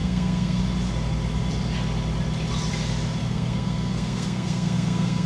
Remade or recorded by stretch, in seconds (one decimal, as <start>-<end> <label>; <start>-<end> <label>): 0.0-0.6 remade; 0.6-3.2 recorded; 3.2-5.3 remade